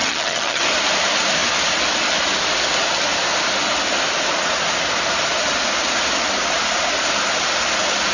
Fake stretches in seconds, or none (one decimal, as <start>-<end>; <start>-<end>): 0.0-0.6

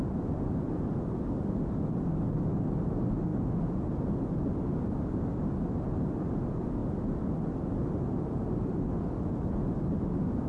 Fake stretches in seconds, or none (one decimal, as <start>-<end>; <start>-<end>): none

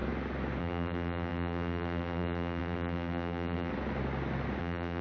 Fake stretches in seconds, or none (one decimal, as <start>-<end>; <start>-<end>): 0.6-3.7; 4.6-5.0

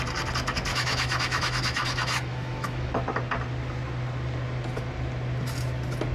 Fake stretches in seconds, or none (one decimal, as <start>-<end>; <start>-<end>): 0.7-2.9